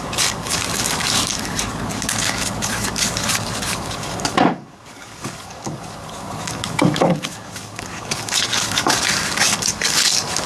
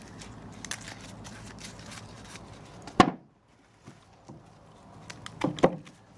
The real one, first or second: second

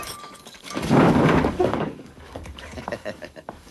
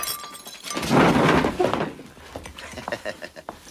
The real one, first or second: second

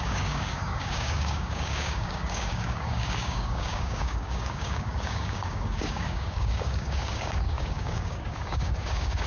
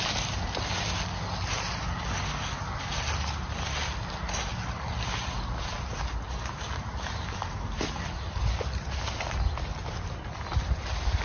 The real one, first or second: second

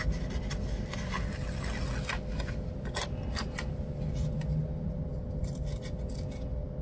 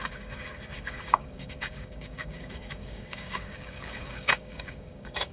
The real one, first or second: first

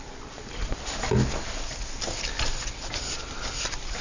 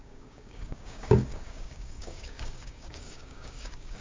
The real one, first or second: first